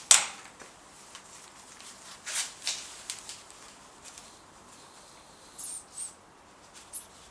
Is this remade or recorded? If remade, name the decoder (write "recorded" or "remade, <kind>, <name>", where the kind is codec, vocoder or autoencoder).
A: recorded